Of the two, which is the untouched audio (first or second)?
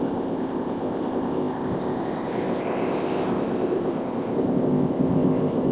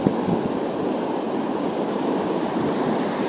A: second